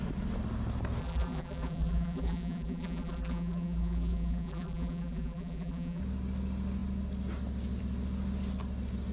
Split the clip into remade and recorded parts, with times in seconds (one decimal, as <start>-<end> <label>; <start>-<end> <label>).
0.0-1.0 recorded; 1.0-6.0 remade; 6.0-9.1 recorded